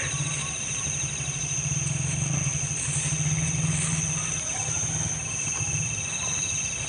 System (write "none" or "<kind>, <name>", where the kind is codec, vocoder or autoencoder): none